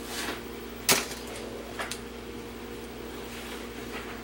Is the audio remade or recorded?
recorded